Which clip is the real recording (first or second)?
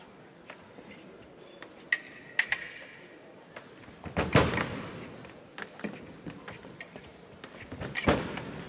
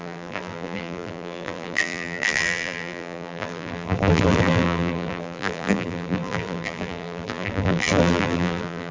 first